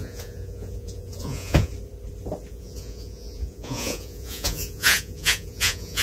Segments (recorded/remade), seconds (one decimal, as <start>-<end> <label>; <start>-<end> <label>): 0.0-1.7 remade; 1.7-2.5 recorded; 2.5-6.0 remade